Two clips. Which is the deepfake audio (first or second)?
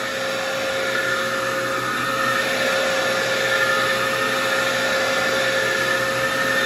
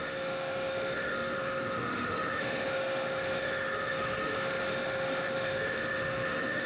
second